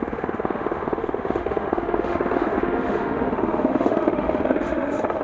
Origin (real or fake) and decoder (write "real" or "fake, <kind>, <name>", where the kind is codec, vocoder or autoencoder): fake, autoencoder, DAC-VAE